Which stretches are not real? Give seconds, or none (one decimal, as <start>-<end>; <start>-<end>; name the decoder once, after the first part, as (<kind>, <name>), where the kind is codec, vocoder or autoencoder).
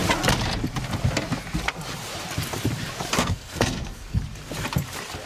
3.2-4.2 (codec, SNAC)